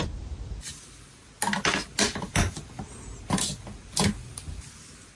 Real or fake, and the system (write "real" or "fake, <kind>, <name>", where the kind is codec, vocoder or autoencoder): real